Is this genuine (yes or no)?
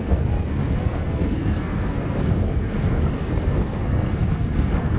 no